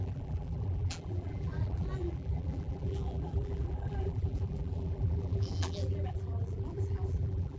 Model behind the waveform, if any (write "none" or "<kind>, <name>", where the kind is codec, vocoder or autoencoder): vocoder, BigVGAN v2